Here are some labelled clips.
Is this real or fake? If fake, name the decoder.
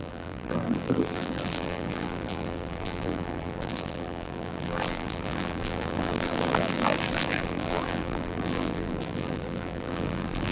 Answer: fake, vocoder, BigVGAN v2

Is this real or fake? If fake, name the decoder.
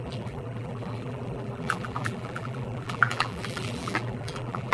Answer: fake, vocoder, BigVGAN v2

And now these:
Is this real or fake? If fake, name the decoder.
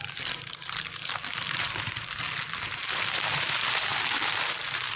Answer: fake, vocoder, BigVGAN v2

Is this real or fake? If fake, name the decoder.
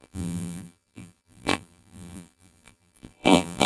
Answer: fake, vocoder, BigVGAN v2